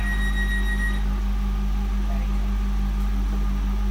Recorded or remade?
recorded